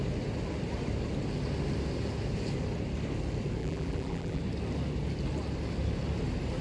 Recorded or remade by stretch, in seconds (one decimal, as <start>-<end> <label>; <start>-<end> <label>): 0.0-3.6 recorded; 3.6-4.4 remade; 4.4-6.6 recorded